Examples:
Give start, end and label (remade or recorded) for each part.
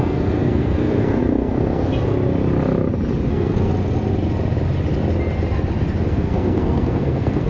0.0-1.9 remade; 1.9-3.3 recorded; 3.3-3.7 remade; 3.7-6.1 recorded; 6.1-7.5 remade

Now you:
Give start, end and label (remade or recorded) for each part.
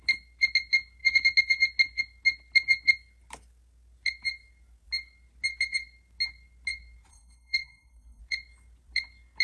0.0-7.1 recorded; 7.1-8.2 remade; 8.2-9.4 recorded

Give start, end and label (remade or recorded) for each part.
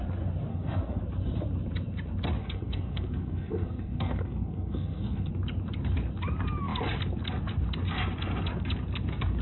0.0-0.5 recorded; 0.5-1.0 remade; 1.0-2.4 recorded; 2.4-5.3 remade; 5.3-9.4 recorded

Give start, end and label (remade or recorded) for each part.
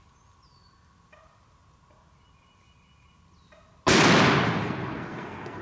0.0-4.6 recorded; 4.6-5.6 remade